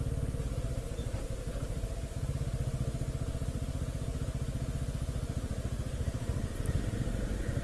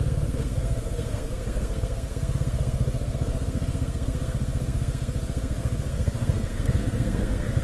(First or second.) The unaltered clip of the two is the first